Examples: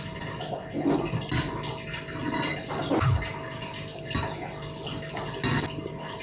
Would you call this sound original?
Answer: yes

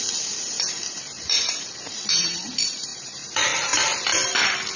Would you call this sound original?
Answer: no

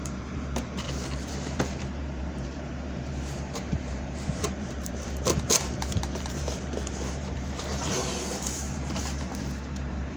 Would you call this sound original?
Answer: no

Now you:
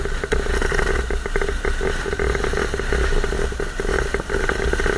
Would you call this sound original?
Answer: yes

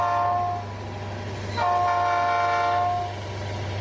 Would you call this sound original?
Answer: yes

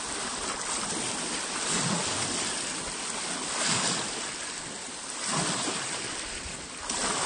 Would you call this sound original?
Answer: yes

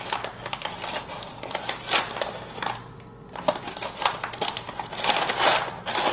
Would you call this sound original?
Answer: yes